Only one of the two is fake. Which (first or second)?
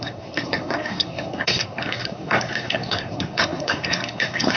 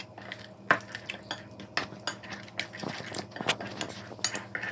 first